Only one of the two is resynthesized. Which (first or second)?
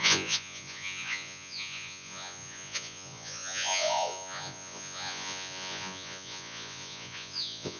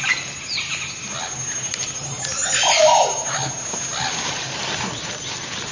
first